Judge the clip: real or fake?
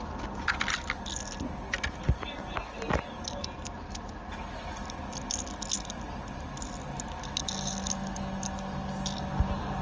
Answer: real